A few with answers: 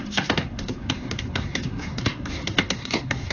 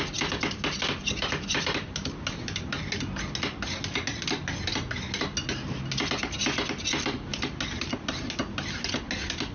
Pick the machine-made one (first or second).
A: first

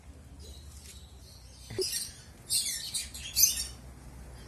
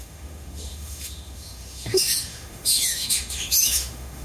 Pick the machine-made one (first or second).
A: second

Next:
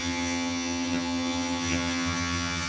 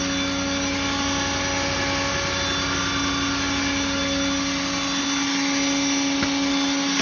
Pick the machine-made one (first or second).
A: first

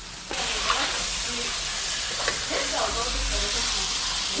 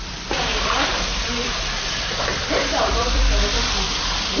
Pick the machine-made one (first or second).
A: second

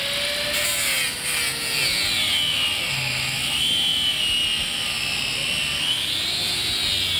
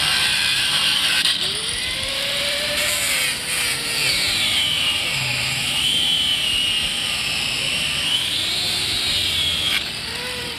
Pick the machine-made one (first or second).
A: second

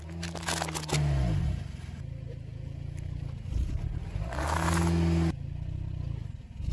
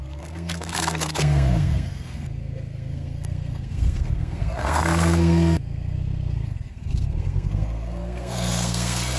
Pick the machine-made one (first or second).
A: second